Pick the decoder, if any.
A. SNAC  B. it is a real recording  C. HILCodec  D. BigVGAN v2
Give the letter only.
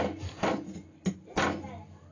B